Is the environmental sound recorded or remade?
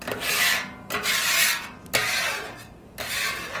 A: recorded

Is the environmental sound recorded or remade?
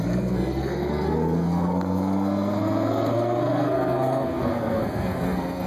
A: remade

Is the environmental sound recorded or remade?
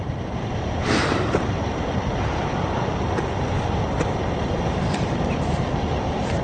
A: remade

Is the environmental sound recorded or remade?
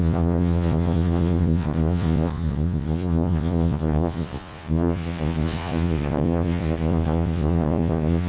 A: remade